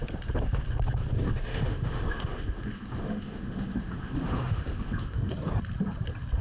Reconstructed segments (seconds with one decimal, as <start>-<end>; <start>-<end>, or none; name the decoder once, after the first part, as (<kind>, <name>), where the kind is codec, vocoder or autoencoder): 1.5-5.3 (autoencoder, DAC-VAE)